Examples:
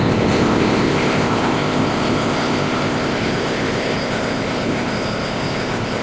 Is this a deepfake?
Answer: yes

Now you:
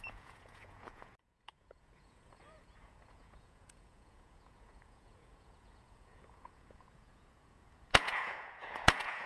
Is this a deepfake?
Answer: yes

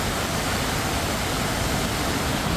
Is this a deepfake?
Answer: no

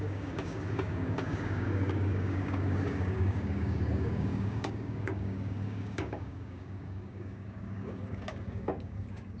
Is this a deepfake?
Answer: yes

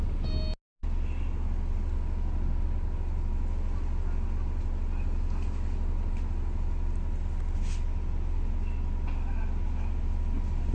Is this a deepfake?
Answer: no